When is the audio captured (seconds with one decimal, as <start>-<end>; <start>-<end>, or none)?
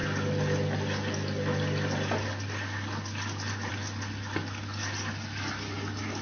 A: 0.0-6.2